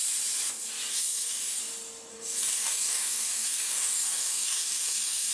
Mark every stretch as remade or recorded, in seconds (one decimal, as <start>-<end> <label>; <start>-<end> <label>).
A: 0.0-0.9 recorded; 0.9-1.6 remade; 1.6-2.1 recorded; 2.1-5.3 remade